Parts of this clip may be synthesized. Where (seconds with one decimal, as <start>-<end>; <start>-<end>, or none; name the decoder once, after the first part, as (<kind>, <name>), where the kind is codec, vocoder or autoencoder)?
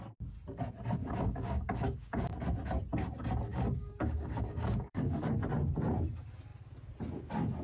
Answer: 1.0-2.3 (codec, DAC); 3.5-5.3